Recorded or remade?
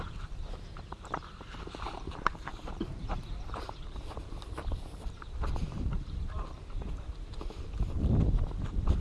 remade